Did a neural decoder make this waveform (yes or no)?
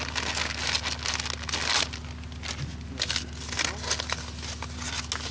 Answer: no